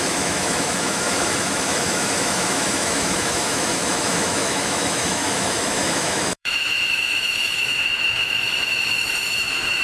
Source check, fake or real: fake